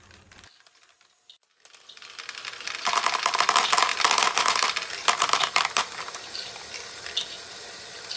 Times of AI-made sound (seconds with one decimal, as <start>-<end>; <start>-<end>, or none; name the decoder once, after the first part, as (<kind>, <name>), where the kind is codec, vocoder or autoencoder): none